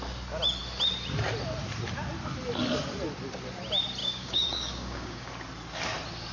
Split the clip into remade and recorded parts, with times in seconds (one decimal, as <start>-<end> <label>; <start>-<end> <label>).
0.0-4.0 recorded; 4.0-5.3 remade; 5.3-6.3 recorded